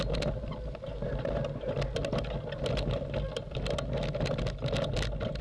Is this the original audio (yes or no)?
yes